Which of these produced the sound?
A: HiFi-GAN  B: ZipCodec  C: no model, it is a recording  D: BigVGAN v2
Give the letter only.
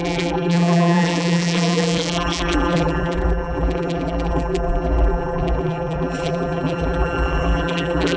D